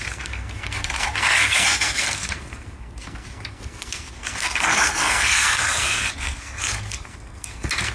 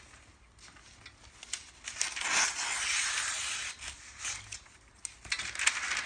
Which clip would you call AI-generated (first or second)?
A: first